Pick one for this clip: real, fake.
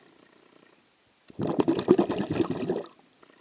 real